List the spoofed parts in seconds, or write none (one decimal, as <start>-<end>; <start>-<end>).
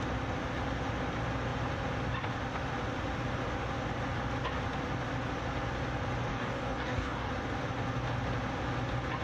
6.3-7.3